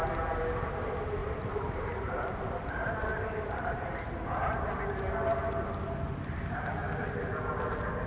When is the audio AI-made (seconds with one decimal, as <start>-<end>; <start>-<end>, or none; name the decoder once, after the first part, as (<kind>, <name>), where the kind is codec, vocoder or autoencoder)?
1.2-2.5 (vocoder, BigVGAN v2)

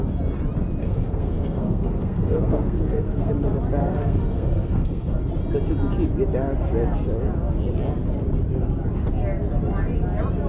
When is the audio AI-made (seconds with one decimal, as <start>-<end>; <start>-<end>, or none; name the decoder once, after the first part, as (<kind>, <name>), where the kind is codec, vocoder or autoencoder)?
0.8-3.3 (codec, SNAC); 3.8-5.2

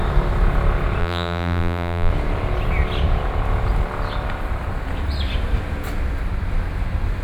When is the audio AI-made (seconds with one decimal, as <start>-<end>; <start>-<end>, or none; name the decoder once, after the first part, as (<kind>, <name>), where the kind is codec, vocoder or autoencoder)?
1.0-2.1 (vocoder, BigVGAN v2)

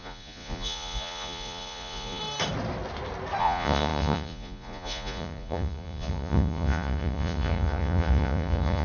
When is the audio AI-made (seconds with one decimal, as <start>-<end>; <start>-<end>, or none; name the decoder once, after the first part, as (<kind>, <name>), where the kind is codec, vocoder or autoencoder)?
0.0-2.2 (vocoder, Vocos); 3.4-8.8

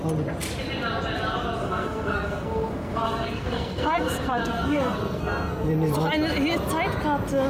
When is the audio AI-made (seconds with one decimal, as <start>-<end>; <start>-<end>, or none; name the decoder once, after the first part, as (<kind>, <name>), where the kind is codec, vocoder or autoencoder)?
1.6-5.7 (codec, SNAC)

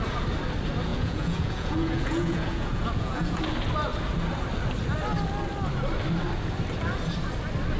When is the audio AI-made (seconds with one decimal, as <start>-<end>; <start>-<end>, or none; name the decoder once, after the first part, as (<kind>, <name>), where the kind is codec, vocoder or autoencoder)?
0.9-3.4 (vocoder, Vocos)

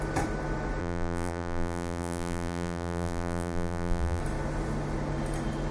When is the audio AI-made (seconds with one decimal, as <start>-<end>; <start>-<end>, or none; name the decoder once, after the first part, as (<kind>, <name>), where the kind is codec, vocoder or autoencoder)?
0.8-4.2 (vocoder, BigVGAN v2)

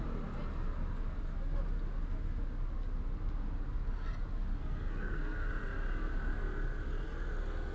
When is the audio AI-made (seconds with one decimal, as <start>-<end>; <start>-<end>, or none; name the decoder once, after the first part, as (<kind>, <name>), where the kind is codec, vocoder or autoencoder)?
4.6-5.5 (codec, SNAC)